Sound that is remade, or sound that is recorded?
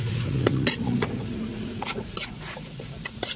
remade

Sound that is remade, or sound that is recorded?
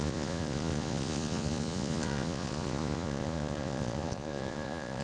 remade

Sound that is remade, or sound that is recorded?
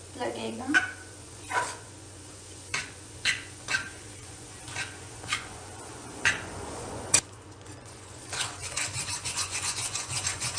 remade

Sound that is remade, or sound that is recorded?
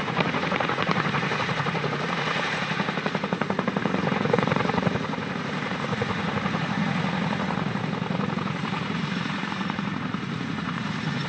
remade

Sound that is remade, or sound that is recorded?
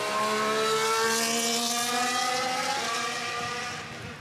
recorded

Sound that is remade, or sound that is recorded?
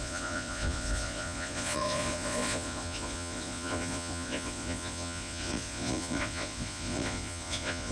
remade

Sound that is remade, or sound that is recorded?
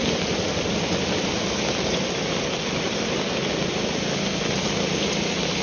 recorded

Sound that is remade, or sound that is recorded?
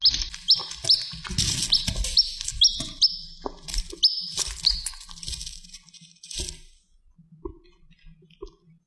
recorded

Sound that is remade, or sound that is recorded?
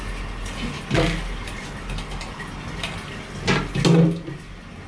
recorded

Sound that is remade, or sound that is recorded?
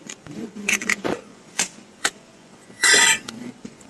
remade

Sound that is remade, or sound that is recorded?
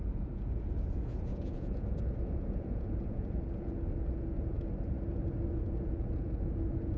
remade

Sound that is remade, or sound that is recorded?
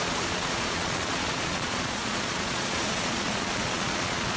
remade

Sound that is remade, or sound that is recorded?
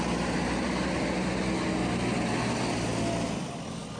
recorded